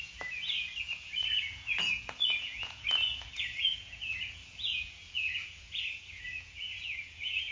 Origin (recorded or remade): remade